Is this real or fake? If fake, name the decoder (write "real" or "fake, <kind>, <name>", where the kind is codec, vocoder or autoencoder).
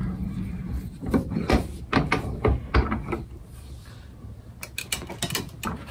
real